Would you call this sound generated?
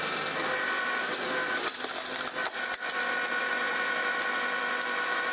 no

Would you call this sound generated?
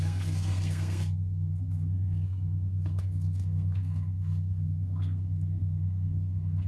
yes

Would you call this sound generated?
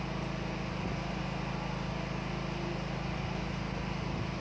no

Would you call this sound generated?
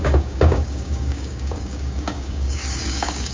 yes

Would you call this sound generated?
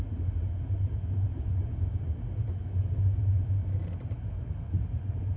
no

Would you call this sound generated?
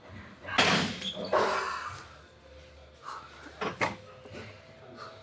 no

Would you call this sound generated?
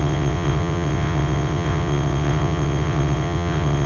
yes